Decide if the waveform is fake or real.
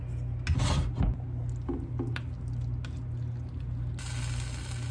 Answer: real